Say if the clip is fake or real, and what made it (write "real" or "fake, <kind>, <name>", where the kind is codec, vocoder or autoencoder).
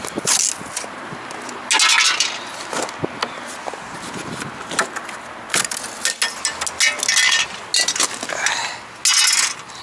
real